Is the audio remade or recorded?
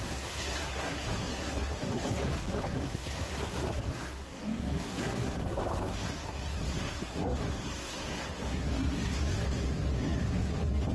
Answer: remade